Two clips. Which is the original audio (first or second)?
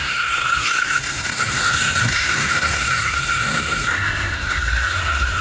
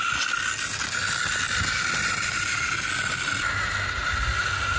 second